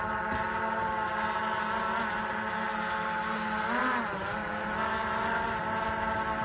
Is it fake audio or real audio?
real